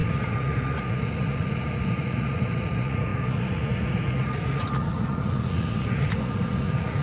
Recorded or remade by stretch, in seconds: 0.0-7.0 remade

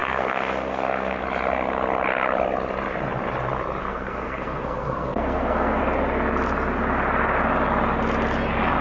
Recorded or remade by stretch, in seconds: 0.0-1.2 remade; 1.2-3.8 recorded; 3.8-5.8 remade; 5.8-8.8 recorded

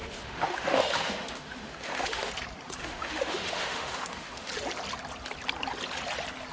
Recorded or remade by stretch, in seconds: 0.0-2.3 remade; 2.3-2.8 recorded; 2.8-4.5 remade; 4.5-6.5 recorded

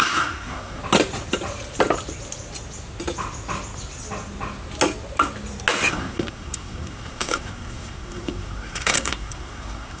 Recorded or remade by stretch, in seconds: 0.0-0.8 remade; 0.8-5.9 recorded; 5.9-10.0 remade

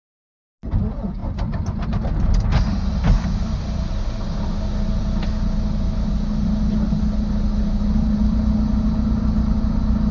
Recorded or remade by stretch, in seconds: 0.0-10.1 recorded

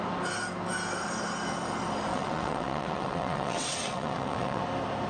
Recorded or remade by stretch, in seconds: 0.0-2.1 recorded; 2.1-4.6 remade; 4.6-5.1 recorded